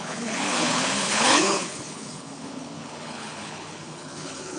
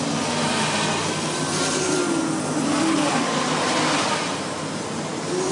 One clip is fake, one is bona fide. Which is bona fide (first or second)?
second